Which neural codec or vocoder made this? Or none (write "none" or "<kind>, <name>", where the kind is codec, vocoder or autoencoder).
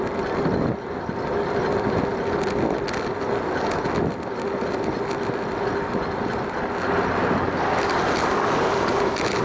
none